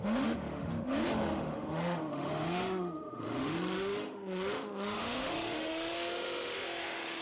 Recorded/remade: remade